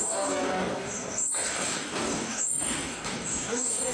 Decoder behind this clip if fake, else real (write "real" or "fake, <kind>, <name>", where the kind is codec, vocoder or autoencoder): fake, codec, DAC